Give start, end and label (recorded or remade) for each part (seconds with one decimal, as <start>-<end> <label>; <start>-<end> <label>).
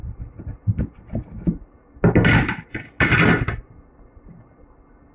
0.0-5.1 recorded